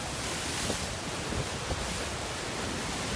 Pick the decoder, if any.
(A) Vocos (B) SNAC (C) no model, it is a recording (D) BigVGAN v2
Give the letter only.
C